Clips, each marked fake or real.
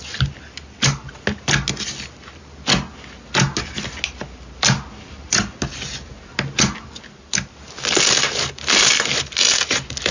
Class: real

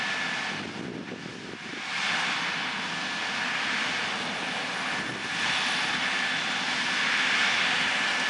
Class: real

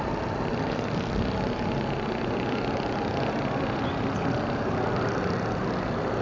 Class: real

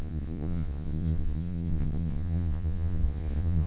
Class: fake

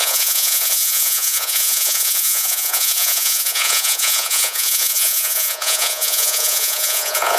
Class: fake